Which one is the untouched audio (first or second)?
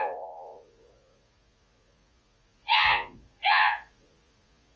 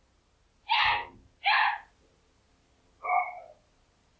second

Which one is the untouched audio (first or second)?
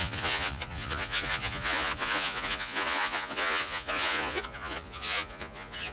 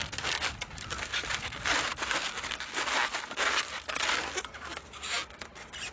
second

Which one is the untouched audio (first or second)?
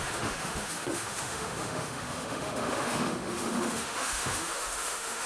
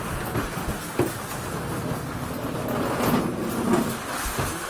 second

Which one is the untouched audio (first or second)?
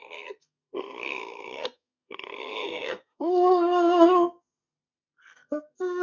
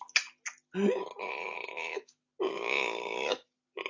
second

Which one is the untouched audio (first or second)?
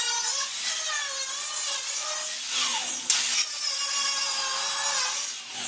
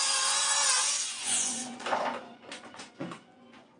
first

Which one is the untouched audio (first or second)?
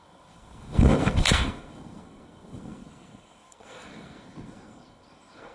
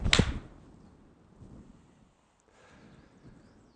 second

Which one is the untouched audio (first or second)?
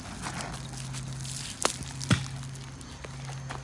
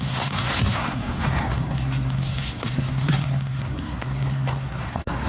first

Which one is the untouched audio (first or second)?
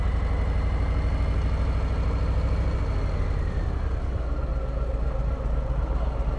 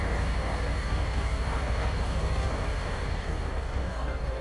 first